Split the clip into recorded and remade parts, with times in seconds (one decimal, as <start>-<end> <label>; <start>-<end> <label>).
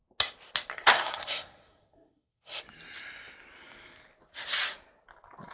0.0-0.7 recorded; 0.7-2.6 remade; 2.6-5.5 recorded